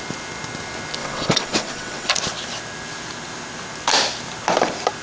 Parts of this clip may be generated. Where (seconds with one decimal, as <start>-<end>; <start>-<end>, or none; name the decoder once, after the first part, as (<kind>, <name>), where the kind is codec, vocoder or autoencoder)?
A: 1.0-2.1 (vocoder, WaveNeXt)